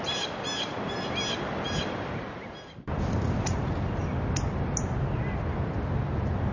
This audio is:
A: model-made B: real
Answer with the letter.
B